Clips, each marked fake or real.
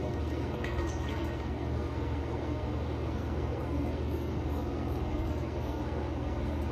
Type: fake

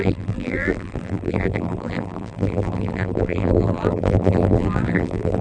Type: fake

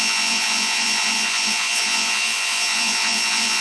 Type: fake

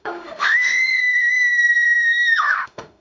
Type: fake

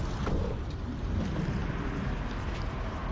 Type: fake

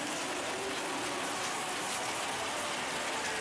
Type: real